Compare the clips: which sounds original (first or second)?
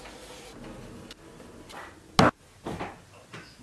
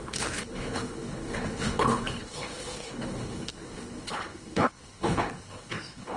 first